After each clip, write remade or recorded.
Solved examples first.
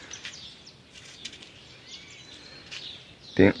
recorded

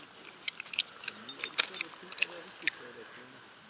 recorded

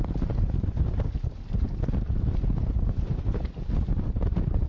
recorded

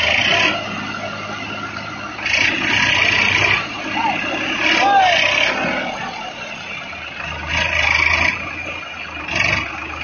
recorded